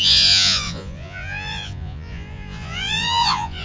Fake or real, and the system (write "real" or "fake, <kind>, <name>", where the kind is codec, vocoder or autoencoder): fake, vocoder, Vocos